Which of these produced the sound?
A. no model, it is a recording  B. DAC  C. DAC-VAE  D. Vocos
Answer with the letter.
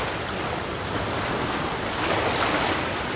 A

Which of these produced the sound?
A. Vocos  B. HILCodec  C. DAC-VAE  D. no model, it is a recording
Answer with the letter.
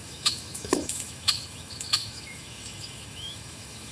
C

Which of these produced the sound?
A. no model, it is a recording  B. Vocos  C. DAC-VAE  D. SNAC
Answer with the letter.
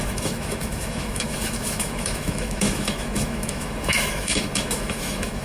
C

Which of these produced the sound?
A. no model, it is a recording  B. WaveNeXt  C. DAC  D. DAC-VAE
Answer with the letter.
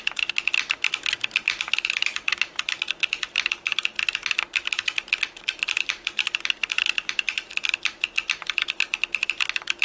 A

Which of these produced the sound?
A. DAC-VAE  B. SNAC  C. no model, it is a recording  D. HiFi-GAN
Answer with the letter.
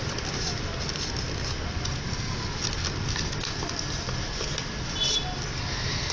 C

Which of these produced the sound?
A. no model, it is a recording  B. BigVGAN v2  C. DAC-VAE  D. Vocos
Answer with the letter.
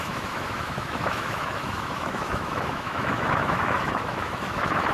C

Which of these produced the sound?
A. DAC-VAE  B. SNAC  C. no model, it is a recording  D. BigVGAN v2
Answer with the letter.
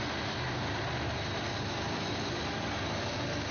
C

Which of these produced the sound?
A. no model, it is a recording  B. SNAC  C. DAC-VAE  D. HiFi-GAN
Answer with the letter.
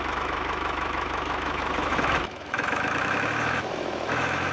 C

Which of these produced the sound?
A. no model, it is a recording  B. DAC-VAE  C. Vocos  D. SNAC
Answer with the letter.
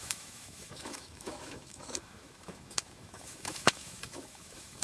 B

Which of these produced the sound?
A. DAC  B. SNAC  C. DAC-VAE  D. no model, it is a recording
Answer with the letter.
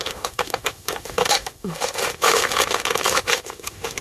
C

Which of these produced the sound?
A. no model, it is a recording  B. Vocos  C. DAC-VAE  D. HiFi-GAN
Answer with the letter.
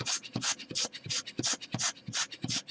A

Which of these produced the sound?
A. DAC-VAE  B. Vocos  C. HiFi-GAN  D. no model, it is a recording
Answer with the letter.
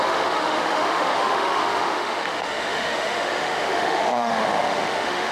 A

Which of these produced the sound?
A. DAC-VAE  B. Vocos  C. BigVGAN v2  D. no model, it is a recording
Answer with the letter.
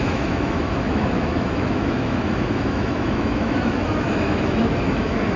A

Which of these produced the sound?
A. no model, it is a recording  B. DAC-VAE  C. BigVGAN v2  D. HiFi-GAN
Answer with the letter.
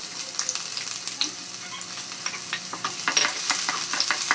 A